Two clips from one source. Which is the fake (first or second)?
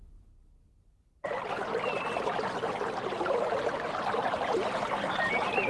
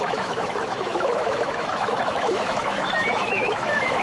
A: second